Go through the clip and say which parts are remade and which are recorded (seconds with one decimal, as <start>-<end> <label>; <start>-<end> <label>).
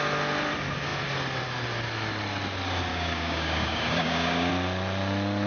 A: 0.0-2.9 recorded; 2.9-4.5 remade; 4.5-5.5 recorded